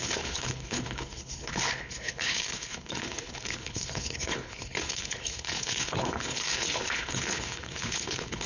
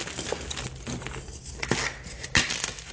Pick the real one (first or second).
second